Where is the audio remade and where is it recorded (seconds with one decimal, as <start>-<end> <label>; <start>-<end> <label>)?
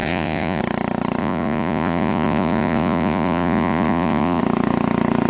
0.0-0.6 remade; 0.6-1.2 recorded; 1.2-4.4 remade; 4.4-5.3 recorded